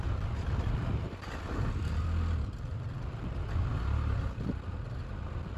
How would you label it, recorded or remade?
recorded